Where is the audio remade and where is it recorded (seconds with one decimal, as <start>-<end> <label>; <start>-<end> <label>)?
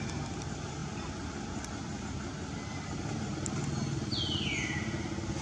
0.0-5.4 recorded